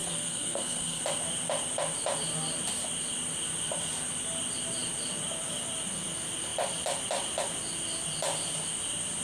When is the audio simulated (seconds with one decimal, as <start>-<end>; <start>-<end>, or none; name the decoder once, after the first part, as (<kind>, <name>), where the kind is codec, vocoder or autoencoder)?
0.0-1.0 (codec, SNAC)